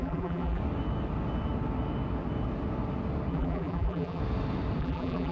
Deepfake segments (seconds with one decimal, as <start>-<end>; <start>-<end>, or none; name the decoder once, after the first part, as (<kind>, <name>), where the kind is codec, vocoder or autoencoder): 0.0-0.6 (vocoder, BigVGAN v2); 3.3-4.2; 4.8-5.3